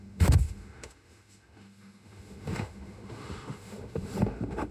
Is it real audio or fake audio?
fake